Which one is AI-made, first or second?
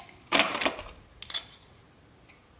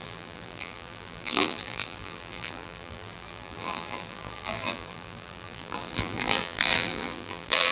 second